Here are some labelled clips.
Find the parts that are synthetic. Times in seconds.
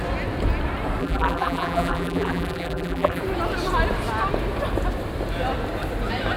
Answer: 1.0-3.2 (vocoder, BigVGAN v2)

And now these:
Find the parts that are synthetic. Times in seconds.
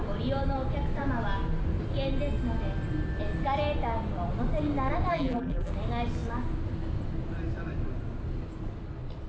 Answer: 5.1-5.7 (vocoder, BigVGAN v2)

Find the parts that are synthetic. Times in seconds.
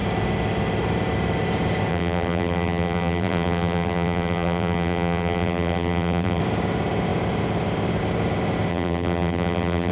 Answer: 1.9-6.4 (vocoder, BigVGAN v2); 8.7-9.9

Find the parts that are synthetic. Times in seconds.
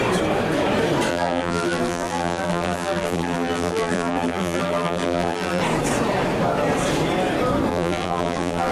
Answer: 1.1-5.6 (vocoder, BigVGAN v2); 7.7-8.7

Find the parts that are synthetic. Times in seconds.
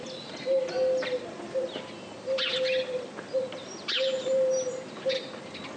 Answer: 3.6-5.0 (vocoder, BigVGAN v2)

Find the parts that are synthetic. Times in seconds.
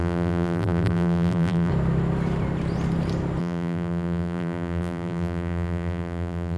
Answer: 0.0-1.7 (vocoder, BigVGAN v2); 3.4-6.6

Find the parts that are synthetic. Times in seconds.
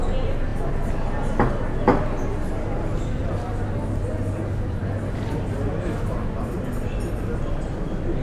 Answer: none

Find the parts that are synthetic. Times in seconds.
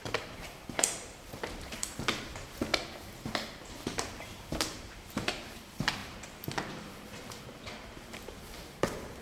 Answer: 0.0-2.7 (vocoder, BigVGAN v2); 3.7-9.2